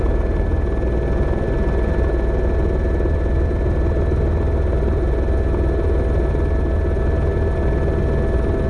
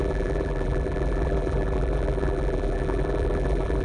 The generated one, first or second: second